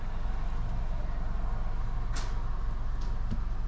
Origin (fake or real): real